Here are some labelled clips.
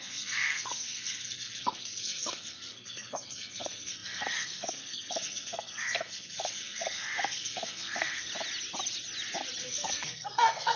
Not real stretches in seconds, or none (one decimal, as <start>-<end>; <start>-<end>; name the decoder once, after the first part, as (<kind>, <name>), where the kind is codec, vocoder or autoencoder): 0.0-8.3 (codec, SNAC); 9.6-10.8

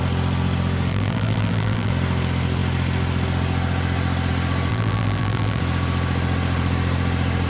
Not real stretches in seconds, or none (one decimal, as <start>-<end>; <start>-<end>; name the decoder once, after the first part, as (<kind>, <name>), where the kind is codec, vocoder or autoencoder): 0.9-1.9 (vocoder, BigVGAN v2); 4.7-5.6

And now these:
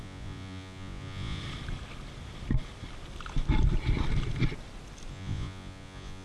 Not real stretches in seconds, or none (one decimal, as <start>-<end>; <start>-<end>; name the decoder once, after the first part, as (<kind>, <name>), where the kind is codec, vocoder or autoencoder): 0.0-1.4 (vocoder, Vocos); 5.1-6.2

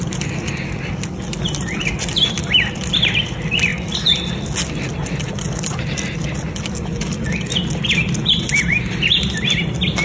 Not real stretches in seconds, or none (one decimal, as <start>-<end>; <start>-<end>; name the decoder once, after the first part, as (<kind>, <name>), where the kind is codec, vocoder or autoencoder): none

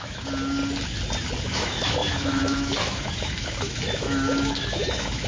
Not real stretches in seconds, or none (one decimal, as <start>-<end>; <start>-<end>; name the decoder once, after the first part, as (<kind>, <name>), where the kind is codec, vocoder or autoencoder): 0.0-0.6 (autoencoder, DAC-VAE); 1.4-5.3

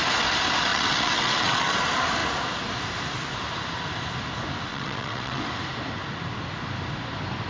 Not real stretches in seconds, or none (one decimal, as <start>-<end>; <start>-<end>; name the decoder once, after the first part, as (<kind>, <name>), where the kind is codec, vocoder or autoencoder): 0.7-1.7 (vocoder, WaveNeXt); 4.7-5.4